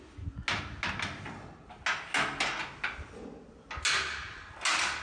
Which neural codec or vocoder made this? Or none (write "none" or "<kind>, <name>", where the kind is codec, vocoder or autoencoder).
none